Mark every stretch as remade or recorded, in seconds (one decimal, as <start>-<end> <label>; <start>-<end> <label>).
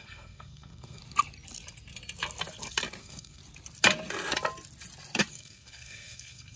0.0-1.0 remade; 1.0-3.0 recorded; 3.0-3.4 remade; 3.4-5.3 recorded; 5.3-6.6 remade